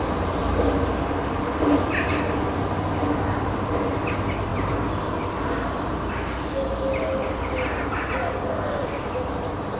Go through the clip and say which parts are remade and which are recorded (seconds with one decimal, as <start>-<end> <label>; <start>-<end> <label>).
0.0-9.8 recorded